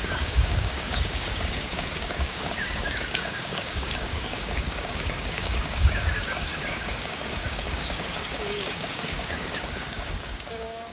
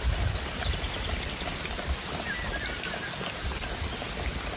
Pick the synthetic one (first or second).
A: first